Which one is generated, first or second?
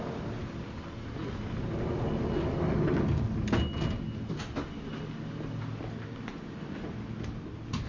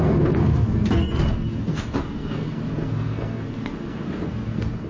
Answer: second